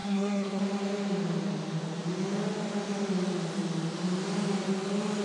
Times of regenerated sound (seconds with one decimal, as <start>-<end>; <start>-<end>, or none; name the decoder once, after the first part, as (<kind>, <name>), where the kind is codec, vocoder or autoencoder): 0.0-0.6 (codec, SNAC)